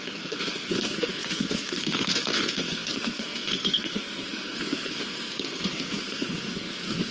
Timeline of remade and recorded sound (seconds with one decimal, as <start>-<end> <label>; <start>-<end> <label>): 0.0-7.1 remade